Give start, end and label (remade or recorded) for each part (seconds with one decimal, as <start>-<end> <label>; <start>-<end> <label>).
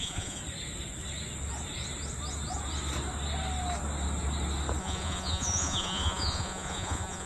0.0-0.4 remade; 0.4-4.8 recorded; 4.8-7.3 remade